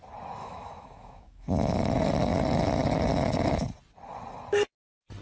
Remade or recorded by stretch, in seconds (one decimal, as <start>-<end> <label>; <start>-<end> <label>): 0.0-0.4 recorded; 0.4-1.8 remade; 1.8-5.2 recorded